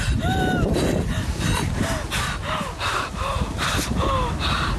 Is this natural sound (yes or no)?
yes